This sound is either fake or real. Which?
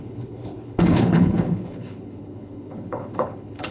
fake